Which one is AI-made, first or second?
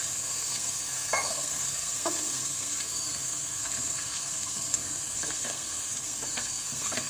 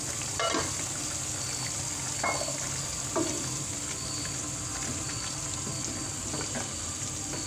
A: first